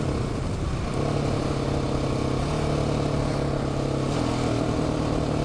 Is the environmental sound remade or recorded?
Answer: recorded